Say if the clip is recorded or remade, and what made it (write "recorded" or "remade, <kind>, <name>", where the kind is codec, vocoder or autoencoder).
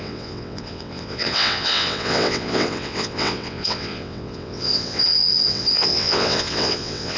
remade, vocoder, WaveNeXt